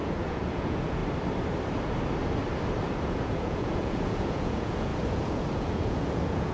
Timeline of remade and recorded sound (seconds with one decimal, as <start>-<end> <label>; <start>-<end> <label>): 0.0-1.0 remade; 1.0-2.9 recorded; 2.9-6.5 remade